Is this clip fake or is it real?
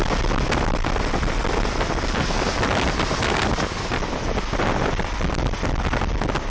real